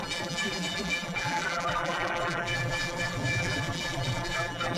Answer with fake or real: fake